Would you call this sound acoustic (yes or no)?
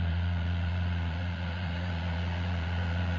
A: no